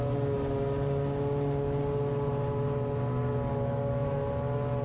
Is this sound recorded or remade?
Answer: recorded